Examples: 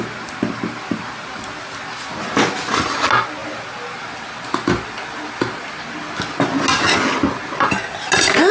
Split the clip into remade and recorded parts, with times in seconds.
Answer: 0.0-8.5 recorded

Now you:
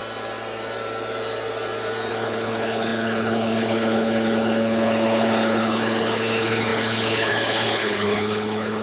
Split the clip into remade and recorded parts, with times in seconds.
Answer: 0.0-2.1 recorded; 2.1-8.8 remade

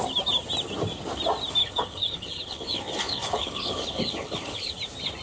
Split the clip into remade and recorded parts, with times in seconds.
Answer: 0.0-1.6 recorded; 1.6-4.7 remade; 4.7-5.2 recorded

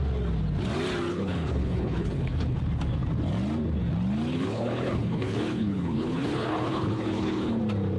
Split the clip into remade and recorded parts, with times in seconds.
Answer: 0.0-1.1 recorded; 1.1-2.6 remade; 2.6-4.3 recorded; 4.3-7.6 remade; 7.6-8.0 recorded

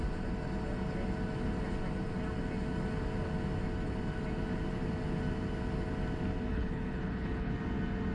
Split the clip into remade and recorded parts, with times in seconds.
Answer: 0.0-6.5 recorded; 6.5-7.5 remade; 7.5-8.1 recorded